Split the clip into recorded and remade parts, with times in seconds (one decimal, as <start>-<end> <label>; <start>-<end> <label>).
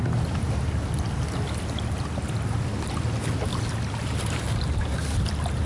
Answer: 0.0-5.7 recorded